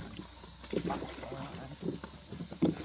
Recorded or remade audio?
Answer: recorded